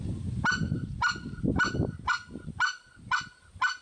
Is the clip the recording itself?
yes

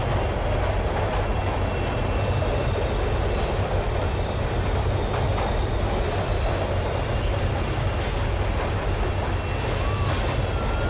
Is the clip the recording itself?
yes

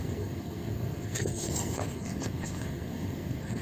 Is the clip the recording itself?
no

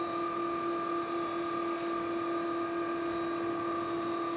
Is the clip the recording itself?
yes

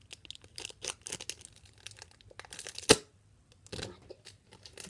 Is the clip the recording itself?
yes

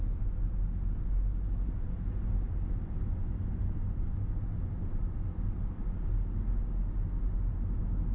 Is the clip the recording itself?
yes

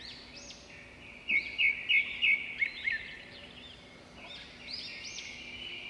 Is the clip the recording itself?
yes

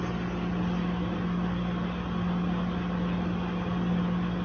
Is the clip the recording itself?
yes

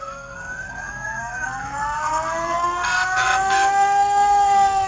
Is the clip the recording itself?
no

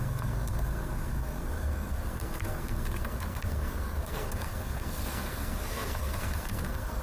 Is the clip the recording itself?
no